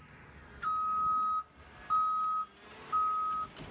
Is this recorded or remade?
recorded